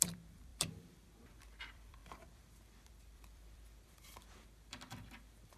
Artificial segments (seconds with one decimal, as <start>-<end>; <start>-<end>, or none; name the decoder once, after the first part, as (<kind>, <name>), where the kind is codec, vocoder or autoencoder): 0.0-5.6 (vocoder, BigVGAN v2)